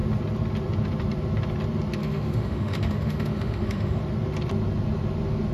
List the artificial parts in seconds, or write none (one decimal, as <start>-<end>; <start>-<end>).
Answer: 2.0-4.0